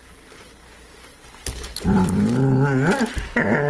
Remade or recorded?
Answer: recorded